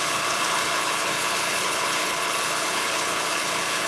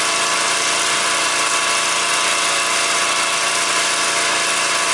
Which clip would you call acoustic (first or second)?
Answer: second